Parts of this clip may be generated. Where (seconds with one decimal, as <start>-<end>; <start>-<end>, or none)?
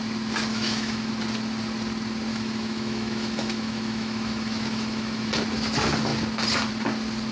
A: 0.5-1.1; 2.3-5.3